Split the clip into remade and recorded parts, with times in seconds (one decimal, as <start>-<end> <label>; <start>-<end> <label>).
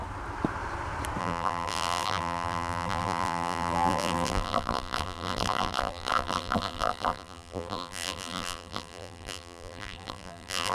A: 0.0-1.2 recorded; 1.2-10.7 remade